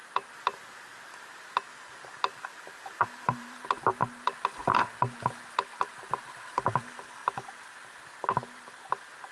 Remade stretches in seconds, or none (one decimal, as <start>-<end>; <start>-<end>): 0.0-9.3